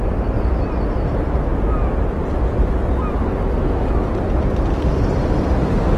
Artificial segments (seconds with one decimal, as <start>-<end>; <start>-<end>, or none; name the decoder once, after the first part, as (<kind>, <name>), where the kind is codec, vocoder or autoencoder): none